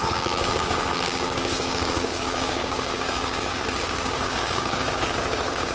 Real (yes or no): no